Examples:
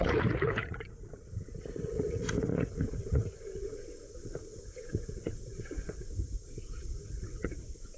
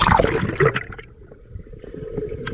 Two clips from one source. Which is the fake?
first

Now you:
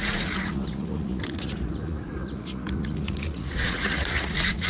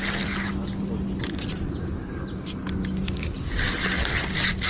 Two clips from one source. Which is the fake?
first